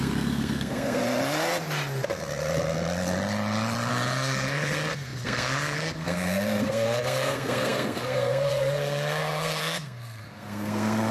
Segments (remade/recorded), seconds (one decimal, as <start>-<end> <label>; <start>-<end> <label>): 0.0-1.0 remade; 1.0-3.9 recorded; 3.9-11.1 remade

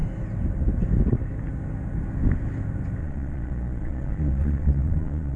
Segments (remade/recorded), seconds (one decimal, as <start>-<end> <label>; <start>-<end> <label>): 0.0-3.0 recorded; 3.0-5.4 remade

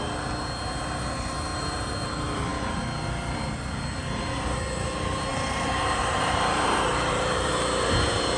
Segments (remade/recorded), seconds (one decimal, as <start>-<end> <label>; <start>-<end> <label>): 0.0-1.5 recorded; 1.5-2.1 remade; 2.1-5.3 recorded; 5.3-7.5 remade; 7.5-8.4 recorded

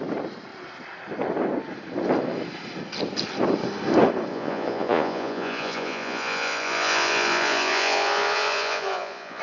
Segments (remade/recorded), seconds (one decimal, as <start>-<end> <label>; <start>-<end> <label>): 0.0-4.3 recorded; 4.3-9.4 remade

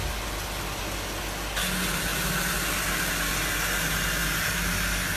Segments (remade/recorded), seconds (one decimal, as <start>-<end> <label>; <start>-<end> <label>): 0.0-5.2 recorded

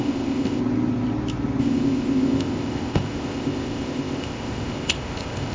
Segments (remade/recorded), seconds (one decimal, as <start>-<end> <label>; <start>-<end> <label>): 0.0-0.6 remade; 0.6-1.6 recorded; 1.6-5.5 remade